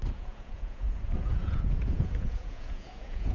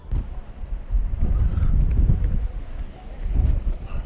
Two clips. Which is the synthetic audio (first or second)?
first